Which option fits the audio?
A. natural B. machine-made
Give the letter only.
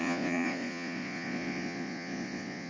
B